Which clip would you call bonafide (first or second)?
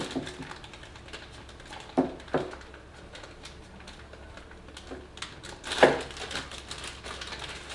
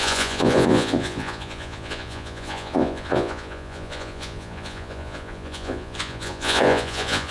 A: first